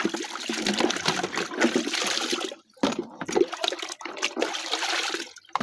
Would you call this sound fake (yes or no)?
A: no